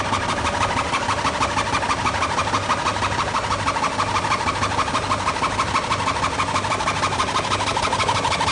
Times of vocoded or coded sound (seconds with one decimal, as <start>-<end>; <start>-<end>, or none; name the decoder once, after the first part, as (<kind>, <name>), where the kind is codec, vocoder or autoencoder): none

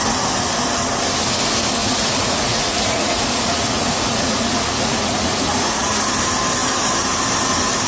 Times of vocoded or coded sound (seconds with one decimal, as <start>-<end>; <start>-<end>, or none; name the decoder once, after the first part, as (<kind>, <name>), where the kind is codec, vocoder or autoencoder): 1.8-6.0 (vocoder, Vocos)

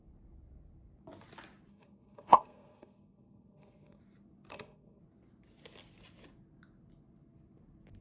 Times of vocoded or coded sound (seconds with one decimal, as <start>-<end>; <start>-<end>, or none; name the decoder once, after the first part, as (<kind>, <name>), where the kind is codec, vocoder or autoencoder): 1.7-4.0 (codec, SNAC); 4.5-5.0

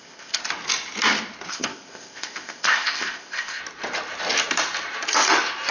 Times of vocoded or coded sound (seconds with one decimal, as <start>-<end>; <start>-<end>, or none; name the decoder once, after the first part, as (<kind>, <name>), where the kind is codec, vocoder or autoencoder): 0.0-0.4 (codec, ZipCodec); 1.5-3.6

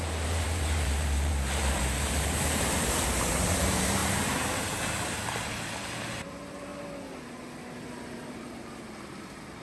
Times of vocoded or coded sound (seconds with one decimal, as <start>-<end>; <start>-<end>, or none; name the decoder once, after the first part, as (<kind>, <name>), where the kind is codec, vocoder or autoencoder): 0.0-4.0 (vocoder, BigVGAN v2); 6.1-6.7; 7.8-9.6

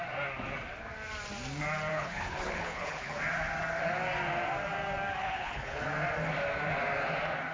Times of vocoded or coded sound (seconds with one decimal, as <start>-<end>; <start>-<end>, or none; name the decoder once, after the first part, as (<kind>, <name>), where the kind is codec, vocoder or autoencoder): 1.9-3.2 (codec, HILCodec); 5.2-5.8